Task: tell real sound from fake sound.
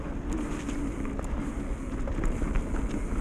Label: real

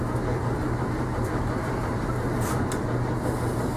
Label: fake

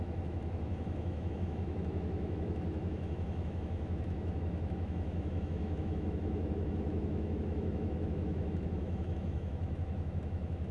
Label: fake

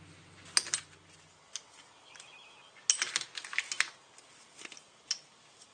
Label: real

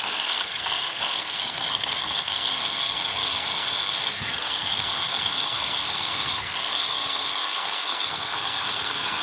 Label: fake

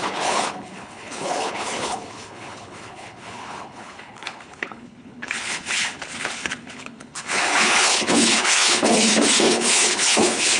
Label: fake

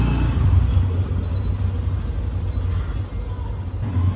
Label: real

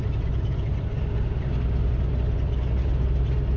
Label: real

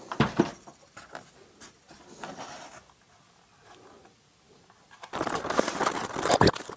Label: real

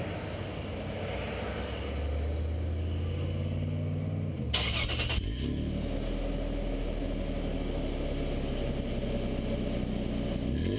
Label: real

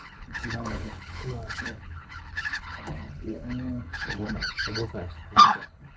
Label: fake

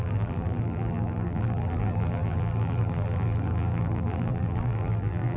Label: fake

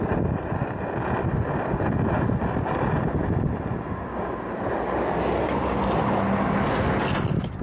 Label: real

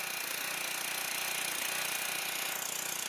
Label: real